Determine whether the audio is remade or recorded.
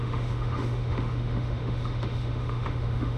remade